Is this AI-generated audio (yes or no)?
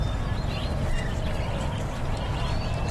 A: no